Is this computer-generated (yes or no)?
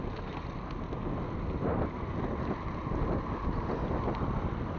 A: no